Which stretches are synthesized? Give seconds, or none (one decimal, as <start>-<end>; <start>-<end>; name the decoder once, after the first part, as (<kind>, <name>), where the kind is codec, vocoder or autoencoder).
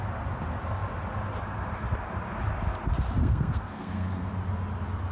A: 3.2-4.3 (codec, SNAC)